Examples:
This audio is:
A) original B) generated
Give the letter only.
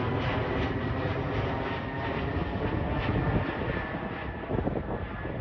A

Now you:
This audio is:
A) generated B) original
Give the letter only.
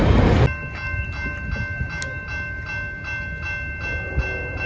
B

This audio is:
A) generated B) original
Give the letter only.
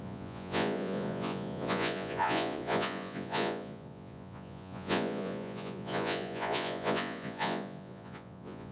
A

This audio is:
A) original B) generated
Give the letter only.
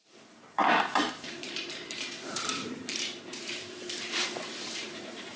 B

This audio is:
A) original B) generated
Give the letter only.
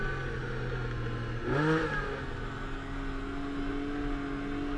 A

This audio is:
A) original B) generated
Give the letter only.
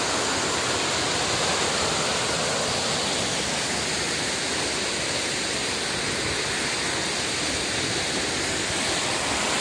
A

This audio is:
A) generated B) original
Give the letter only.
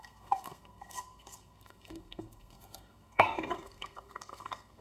A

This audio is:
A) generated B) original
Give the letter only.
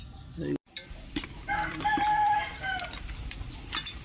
A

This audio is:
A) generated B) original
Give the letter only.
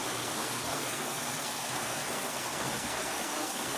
A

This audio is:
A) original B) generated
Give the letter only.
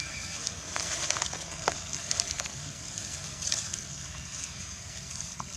B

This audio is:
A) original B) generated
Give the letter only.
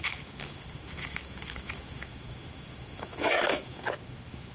B